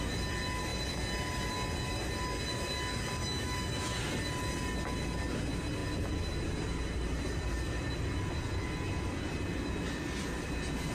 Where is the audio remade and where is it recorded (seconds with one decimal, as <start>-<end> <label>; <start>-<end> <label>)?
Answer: 0.0-3.2 recorded; 3.2-4.0 remade; 4.0-10.9 recorded